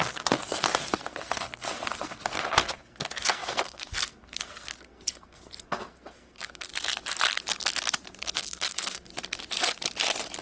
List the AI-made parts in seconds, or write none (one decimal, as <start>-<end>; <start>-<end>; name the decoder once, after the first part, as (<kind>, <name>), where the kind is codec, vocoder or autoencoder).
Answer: 0.0-6.7 (codec, SNAC); 8.2-9.1